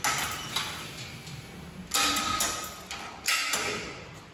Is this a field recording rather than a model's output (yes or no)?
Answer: yes